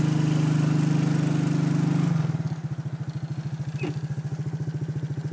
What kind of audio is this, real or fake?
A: real